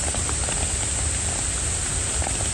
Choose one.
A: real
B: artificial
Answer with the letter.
A